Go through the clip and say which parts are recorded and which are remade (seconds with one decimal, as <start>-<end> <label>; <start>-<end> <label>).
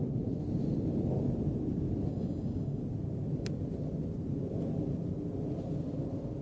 0.0-2.1 recorded; 2.1-2.8 remade; 2.8-6.4 recorded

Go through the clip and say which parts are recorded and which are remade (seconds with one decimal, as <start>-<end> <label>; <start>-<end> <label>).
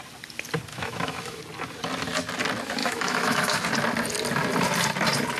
0.0-0.7 recorded; 0.7-1.4 remade; 1.4-2.8 recorded; 2.8-3.6 remade; 3.6-5.4 recorded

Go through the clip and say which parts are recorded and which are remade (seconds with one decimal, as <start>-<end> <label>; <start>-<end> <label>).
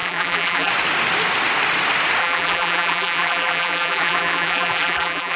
0.0-0.7 remade; 0.7-2.2 recorded; 2.2-5.4 remade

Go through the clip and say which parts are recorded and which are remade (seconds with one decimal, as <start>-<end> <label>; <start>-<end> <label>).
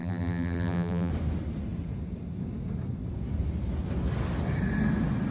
0.0-1.1 remade; 1.1-5.3 recorded